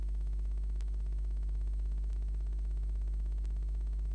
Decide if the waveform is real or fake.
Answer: real